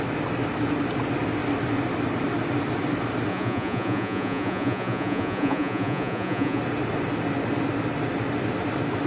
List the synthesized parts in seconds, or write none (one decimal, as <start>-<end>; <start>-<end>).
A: 3.3-6.6

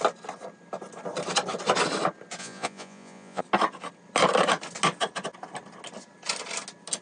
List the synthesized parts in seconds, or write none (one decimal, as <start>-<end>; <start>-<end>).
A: 2.4-3.4